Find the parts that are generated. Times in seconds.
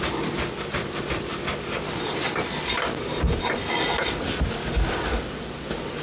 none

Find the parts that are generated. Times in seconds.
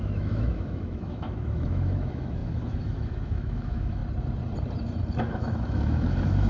0.0-4.0 (autoencoder, DAC-VAE); 5.2-6.5